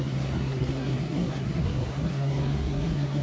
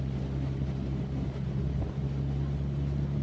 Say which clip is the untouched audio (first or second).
second